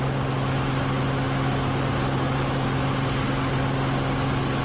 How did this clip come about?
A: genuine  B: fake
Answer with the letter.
A